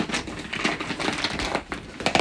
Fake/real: real